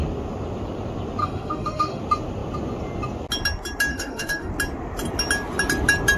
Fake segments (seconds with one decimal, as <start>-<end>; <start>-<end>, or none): 1.2-2.0; 3.9-4.5